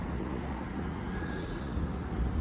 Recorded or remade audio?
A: remade